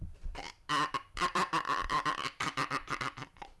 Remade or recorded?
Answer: remade